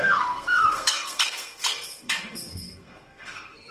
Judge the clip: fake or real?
fake